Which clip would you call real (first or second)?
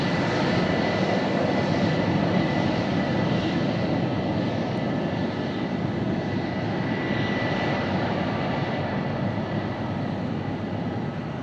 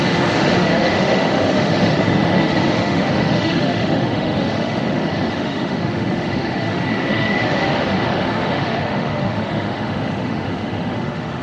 first